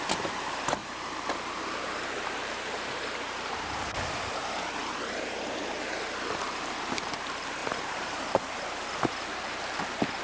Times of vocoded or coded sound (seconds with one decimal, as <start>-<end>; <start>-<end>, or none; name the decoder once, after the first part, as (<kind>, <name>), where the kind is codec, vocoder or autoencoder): 0.8-4.1 (vocoder, BigVGAN v2); 4.8-5.6; 7.6-8.6